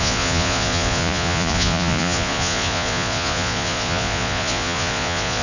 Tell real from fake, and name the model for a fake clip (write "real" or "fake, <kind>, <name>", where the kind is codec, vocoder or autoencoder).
fake, vocoder, Vocos